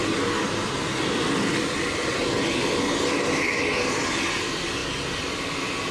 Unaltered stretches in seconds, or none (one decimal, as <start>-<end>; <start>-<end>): 0.0-5.9